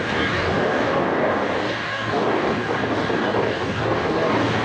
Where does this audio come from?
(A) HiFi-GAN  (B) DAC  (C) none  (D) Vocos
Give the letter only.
B